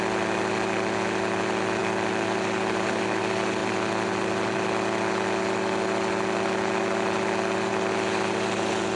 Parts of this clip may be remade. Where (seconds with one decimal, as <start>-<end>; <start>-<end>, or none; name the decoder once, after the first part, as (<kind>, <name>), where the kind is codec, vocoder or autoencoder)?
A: none